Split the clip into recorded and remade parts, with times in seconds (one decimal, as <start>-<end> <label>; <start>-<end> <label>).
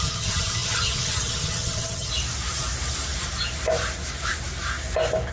0.0-2.1 remade; 2.1-5.3 recorded